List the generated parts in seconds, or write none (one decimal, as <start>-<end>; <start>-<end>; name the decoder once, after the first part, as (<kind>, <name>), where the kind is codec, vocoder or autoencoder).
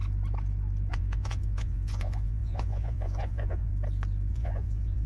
0.9-3.7 (vocoder, Vocos); 4.3-5.1